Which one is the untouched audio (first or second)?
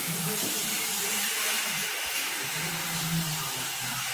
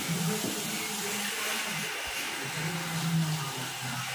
second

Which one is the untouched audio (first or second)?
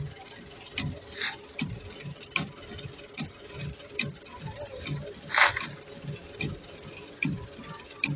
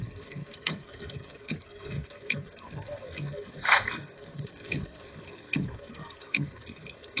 first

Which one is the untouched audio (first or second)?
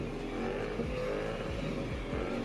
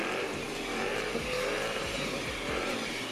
first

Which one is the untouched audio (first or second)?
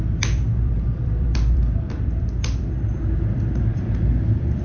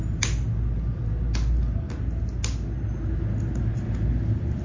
second